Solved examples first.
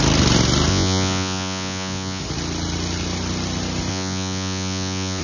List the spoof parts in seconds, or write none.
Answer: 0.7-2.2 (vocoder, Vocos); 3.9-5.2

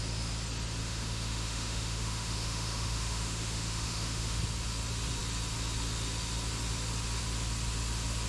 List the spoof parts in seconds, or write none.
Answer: 0.8-4.4 (autoencoder, DAC-VAE)